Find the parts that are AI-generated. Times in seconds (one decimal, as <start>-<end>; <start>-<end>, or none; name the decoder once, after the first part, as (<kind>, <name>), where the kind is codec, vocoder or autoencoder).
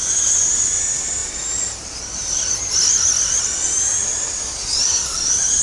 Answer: 4.0-4.9 (vocoder, BigVGAN v2)